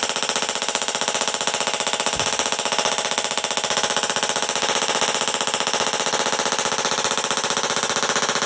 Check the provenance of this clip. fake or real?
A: real